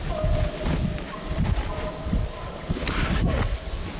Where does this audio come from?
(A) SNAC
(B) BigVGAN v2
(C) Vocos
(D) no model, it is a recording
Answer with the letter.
D